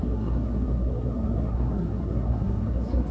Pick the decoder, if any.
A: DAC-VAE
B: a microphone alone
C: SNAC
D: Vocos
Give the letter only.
C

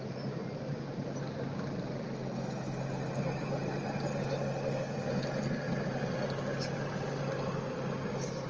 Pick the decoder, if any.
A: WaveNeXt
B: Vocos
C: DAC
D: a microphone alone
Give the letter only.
D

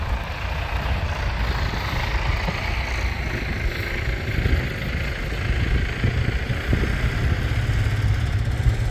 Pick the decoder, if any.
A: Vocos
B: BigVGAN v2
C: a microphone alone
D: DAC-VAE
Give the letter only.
C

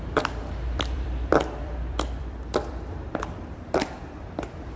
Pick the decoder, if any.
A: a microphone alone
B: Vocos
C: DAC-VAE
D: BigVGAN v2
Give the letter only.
D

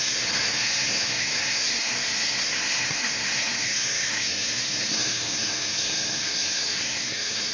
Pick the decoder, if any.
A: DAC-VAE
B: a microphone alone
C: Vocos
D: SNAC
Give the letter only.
D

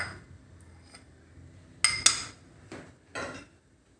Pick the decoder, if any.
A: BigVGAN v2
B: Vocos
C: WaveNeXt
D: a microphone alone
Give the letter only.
D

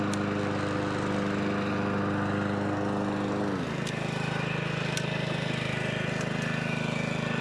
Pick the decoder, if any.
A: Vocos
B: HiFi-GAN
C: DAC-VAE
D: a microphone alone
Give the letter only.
D